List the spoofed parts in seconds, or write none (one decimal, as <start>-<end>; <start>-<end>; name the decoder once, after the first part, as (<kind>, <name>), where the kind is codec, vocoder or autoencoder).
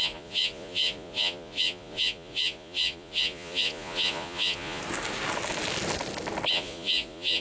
0.0-4.8 (vocoder, Vocos); 6.5-7.4